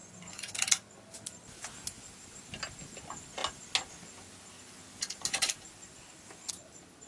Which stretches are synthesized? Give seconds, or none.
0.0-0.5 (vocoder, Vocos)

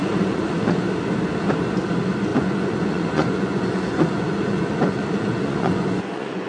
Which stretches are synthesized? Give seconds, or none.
0.0-0.8 (vocoder, Vocos); 2.3-6.5

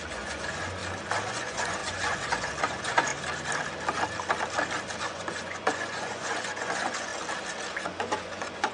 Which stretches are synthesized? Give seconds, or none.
0.0-0.8 (vocoder, Vocos); 1.3-3.1; 5.0-7.1; 7.8-8.7

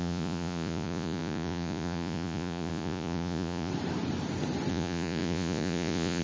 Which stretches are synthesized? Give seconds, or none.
0.0-3.7 (vocoder, Vocos); 4.7-6.2

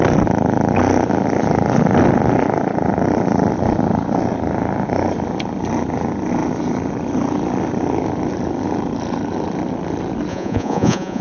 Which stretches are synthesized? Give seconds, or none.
10.3-11.2 (vocoder, Vocos)

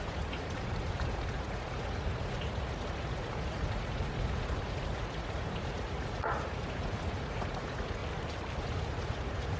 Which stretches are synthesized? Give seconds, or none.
0.0-8.0 (vocoder, Vocos); 8.6-9.6

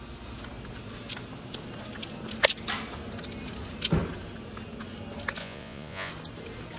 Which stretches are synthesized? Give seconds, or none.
5.4-6.1 (vocoder, Vocos)